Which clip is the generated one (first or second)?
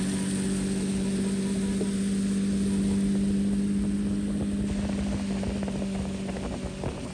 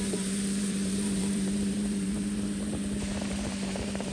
second